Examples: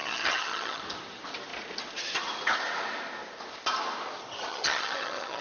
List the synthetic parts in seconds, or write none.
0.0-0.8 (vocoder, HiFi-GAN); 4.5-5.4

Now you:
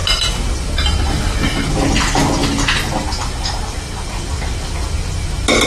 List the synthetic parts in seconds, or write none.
0.0-1.8 (vocoder, BigVGAN v2)

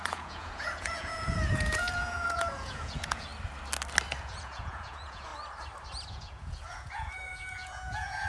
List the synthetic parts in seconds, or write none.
0.0-3.3 (vocoder, Vocos); 4.2-5.3; 6.1-8.3

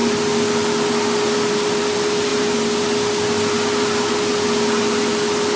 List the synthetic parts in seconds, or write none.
none